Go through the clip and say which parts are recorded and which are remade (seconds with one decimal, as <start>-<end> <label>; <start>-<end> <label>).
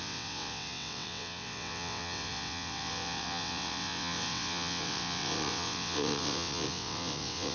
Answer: 0.0-7.5 remade